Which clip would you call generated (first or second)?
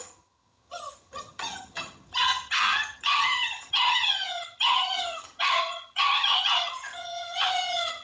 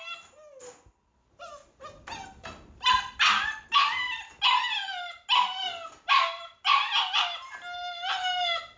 first